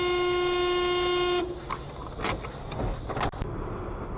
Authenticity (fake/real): real